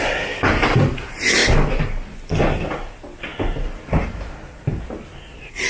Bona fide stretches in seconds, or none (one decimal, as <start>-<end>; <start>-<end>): 0.0-5.7